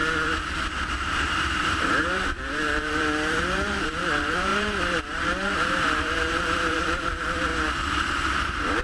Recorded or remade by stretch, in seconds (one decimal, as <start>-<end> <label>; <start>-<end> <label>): 0.0-0.9 recorded; 0.9-7.5 remade; 7.5-8.8 recorded